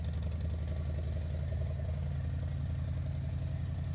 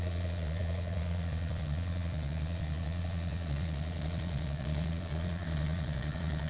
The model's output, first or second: second